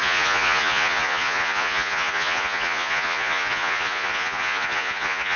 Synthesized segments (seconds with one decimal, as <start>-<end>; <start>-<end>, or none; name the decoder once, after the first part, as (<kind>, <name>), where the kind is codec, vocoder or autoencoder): 0.0-5.4 (vocoder, Vocos)